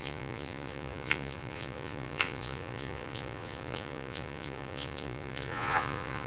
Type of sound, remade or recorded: remade